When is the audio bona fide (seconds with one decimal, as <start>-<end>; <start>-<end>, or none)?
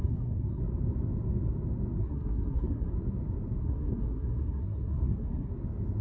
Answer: 0.6-2.0; 2.9-3.6; 5.5-6.0